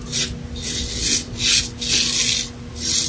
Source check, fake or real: real